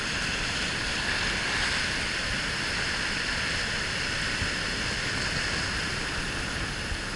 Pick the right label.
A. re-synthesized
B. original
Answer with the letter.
B